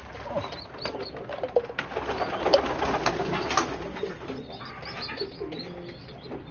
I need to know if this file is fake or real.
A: real